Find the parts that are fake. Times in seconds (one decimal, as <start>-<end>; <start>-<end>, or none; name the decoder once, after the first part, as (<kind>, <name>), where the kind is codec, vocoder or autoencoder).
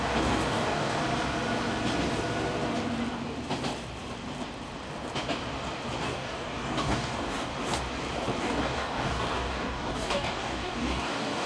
0.0-1.0 (codec, DAC); 6.0-7.5; 8.4-11.5